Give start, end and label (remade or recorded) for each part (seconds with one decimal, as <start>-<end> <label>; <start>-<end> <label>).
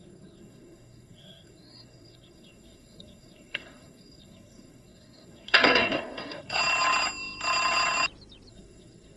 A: 0.0-6.6 remade; 6.6-8.5 recorded; 8.5-9.2 remade